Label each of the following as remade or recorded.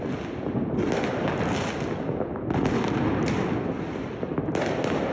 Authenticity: recorded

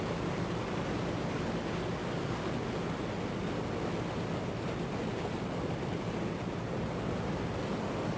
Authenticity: recorded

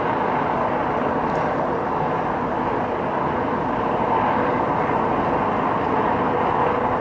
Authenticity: recorded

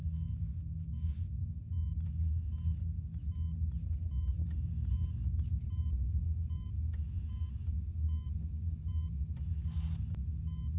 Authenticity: recorded